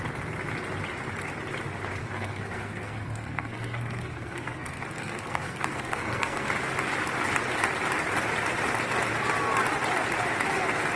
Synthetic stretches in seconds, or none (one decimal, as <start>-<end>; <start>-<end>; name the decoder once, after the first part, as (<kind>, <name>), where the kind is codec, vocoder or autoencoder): 2.0-6.5 (codec, SNAC)